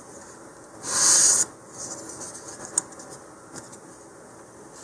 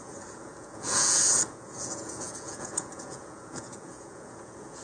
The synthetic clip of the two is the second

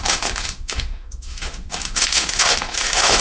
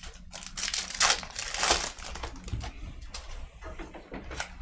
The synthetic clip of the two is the first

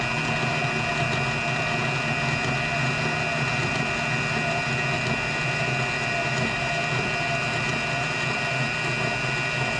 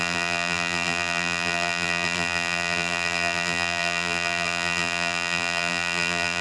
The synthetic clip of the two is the second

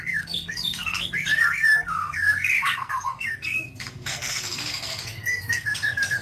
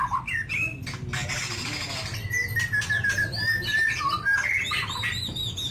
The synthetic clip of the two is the first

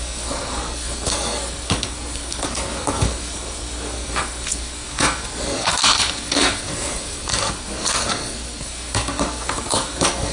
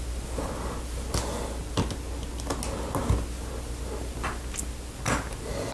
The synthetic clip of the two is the first